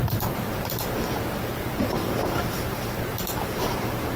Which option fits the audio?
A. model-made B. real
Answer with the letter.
A